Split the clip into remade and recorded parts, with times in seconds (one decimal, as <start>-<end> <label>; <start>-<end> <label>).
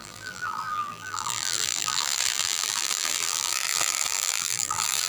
0.0-5.1 remade